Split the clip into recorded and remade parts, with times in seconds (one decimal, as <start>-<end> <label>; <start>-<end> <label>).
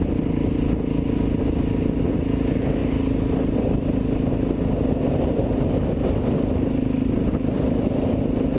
0.0-8.6 recorded